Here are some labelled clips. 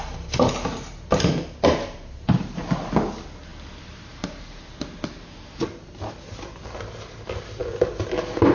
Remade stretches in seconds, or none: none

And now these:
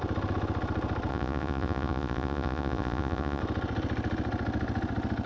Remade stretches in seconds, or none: 1.1-3.4 (vocoder, Vocos)

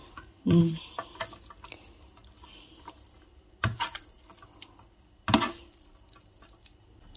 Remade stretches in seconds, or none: 0.0-0.6 (vocoder, Vocos)

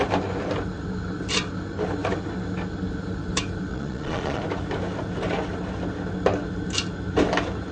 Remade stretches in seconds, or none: 3.7-4.4 (vocoder, Vocos)

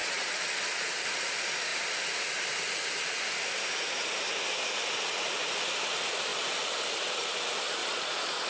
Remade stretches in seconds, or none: 0.0-0.6 (vocoder, Vocos); 7.8-8.5

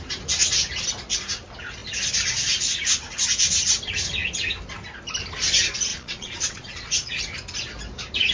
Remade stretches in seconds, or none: 5.9-7.2 (vocoder, Vocos)